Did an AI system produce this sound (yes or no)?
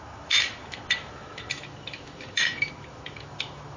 yes